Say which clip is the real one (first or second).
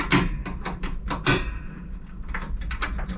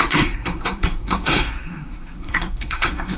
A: first